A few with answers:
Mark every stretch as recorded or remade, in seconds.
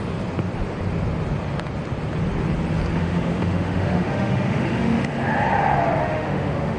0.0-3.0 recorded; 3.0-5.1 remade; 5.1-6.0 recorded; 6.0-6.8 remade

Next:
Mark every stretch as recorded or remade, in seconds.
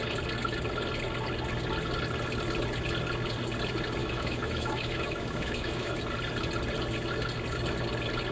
0.0-4.0 recorded; 4.0-6.0 remade; 6.0-8.3 recorded